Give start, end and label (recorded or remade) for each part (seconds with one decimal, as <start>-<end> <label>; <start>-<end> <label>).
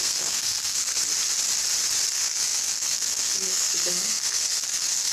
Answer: 0.0-1.1 remade; 1.1-2.1 recorded; 2.1-5.1 remade